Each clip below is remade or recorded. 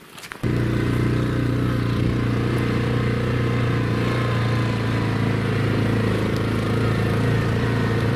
recorded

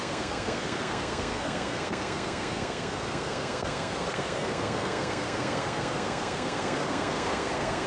remade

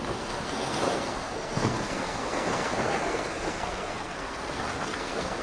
remade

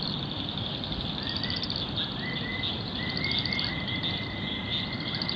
recorded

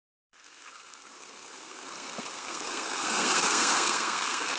remade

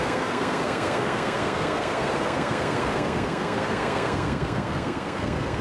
remade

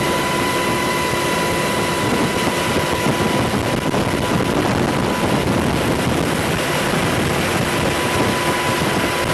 recorded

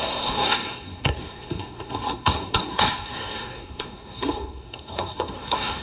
remade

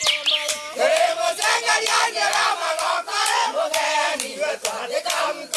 recorded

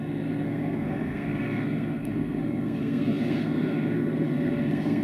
remade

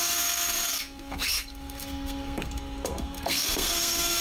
remade